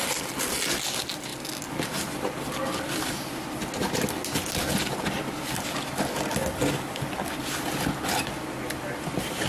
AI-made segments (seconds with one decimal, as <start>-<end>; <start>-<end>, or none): none